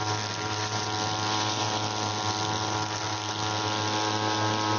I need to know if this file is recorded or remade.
recorded